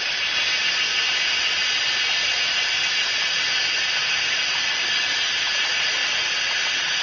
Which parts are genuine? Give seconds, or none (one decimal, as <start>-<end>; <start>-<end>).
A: 0.0-7.0